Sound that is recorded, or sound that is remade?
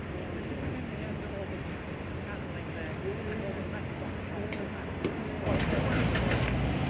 recorded